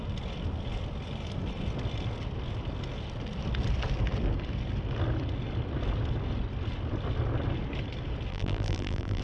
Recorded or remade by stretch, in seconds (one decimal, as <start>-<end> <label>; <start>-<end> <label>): 0.0-8.3 recorded; 8.3-9.2 remade